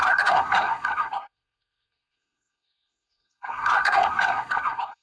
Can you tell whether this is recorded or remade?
remade